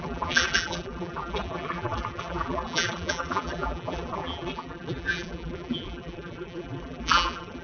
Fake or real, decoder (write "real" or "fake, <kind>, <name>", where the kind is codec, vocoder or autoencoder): fake, vocoder, BigVGAN v2